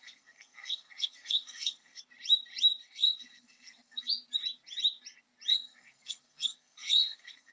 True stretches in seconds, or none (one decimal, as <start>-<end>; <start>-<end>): 2.0-2.8; 4.1-5.5